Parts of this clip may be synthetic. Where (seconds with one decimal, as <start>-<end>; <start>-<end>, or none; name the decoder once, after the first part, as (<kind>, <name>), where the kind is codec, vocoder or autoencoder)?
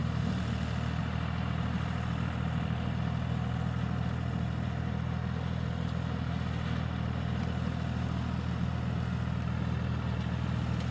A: none